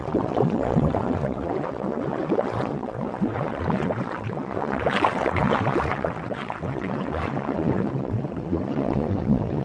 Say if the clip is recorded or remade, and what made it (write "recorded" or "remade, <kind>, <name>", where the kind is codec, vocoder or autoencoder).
remade, vocoder, WaveNeXt